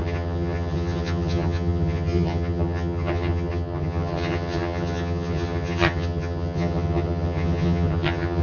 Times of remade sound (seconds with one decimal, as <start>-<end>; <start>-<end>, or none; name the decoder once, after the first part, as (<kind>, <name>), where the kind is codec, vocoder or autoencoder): 0.0-8.4 (vocoder, HiFi-GAN)

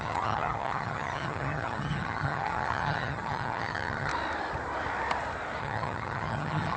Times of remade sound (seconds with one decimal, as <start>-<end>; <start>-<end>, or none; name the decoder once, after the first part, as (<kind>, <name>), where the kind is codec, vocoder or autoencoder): 0.0-4.1 (vocoder, HiFi-GAN); 5.6-6.8

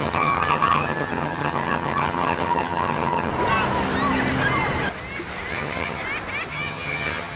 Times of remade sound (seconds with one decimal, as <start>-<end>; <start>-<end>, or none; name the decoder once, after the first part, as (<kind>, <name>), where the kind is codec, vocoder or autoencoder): 0.0-3.3 (vocoder, HiFi-GAN); 5.5-6.0; 6.5-7.4

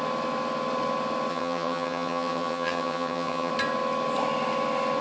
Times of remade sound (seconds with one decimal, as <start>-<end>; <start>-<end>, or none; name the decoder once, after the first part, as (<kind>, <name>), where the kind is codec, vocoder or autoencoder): 1.3-3.5 (vocoder, HiFi-GAN)

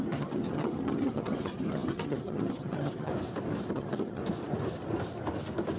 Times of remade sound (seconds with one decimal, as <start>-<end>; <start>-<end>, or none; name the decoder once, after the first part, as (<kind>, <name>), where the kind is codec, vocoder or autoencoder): 0.0-3.1 (vocoder, HiFi-GAN); 3.7-4.2